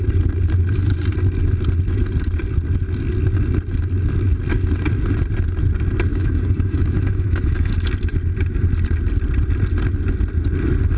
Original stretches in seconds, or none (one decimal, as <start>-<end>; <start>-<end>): 0.0-6.1; 7.7-11.0